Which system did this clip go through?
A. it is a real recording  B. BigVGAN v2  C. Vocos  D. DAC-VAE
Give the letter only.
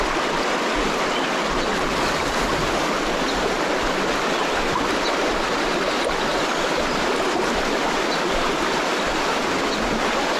A